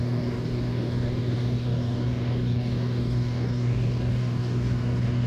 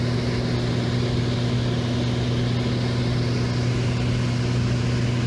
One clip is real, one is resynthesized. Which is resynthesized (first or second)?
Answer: first